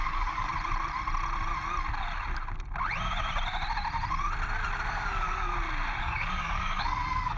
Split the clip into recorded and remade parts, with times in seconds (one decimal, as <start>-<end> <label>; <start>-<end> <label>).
0.0-0.5 remade; 0.5-4.9 recorded; 4.9-5.5 remade; 5.5-6.0 recorded; 6.0-7.4 remade